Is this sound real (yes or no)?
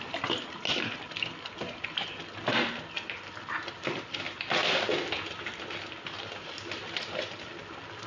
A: yes